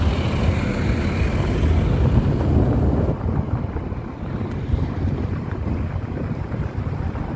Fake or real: real